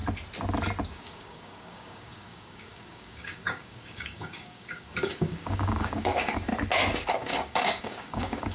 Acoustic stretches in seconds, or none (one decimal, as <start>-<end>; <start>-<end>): 0.0-0.9; 6.5-7.1